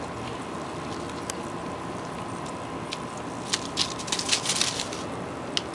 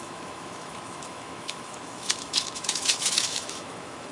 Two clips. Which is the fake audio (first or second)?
second